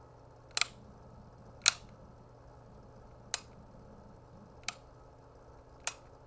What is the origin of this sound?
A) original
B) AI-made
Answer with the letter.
A